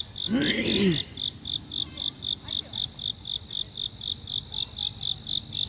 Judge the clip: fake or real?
real